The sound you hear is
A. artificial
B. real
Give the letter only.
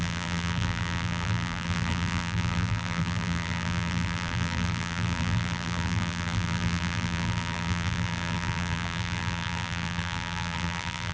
A